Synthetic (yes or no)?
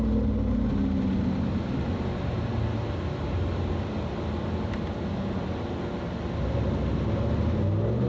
no